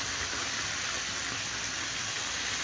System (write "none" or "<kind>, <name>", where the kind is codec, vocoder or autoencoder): none